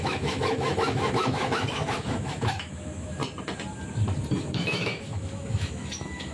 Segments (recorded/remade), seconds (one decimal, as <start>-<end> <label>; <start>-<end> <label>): 0.0-3.2 remade; 3.2-4.5 recorded; 4.5-6.3 remade